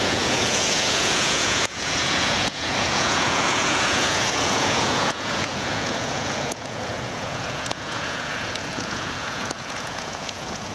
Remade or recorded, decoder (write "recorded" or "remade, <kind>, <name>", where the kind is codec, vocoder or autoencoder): remade, vocoder, Vocos